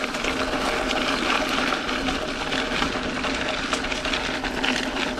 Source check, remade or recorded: recorded